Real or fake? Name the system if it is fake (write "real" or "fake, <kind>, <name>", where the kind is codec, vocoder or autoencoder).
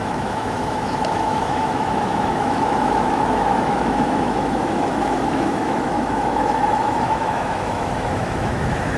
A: fake, autoencoder, DAC-VAE